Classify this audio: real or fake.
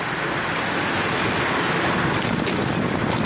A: real